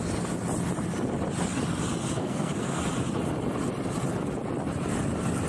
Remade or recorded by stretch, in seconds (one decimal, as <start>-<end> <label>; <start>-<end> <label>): 0.0-2.2 recorded; 2.2-2.8 remade; 2.8-5.5 recorded

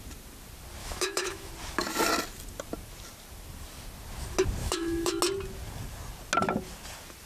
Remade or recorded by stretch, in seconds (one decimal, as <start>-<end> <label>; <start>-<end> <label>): 0.0-0.8 recorded; 0.8-1.5 remade; 1.5-4.6 recorded; 4.6-5.2 remade; 5.2-7.3 recorded

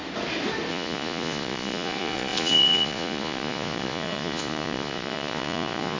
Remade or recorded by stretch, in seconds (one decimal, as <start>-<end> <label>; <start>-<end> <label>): 0.0-0.7 recorded; 0.7-6.0 remade

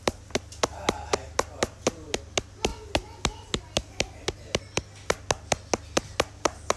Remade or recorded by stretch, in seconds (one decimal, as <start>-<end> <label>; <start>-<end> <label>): 0.0-6.8 recorded

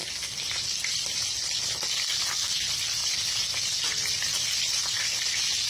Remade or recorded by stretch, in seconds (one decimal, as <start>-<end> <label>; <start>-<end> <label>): 0.0-5.7 recorded

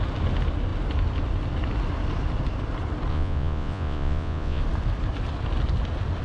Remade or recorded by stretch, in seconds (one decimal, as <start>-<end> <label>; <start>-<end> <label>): 0.0-3.1 recorded; 3.1-4.6 remade; 4.6-6.2 recorded

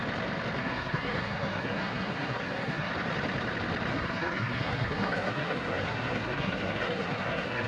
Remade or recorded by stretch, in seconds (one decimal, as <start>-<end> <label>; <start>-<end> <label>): 0.0-0.6 recorded; 0.6-2.9 remade; 2.9-3.9 recorded; 3.9-7.7 remade

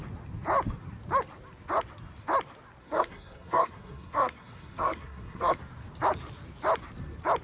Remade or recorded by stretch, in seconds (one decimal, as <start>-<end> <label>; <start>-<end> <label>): 0.0-2.8 recorded; 2.8-5.6 remade; 5.6-7.4 recorded